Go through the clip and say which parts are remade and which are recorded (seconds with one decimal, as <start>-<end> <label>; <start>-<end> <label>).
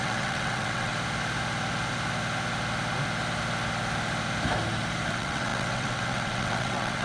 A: 0.0-0.9 remade; 0.9-5.1 recorded; 5.1-7.0 remade